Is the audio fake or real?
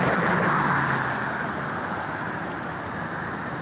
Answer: real